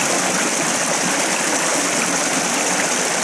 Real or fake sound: real